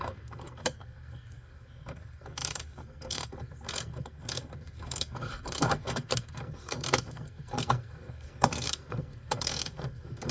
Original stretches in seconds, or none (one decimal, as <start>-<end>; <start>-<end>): none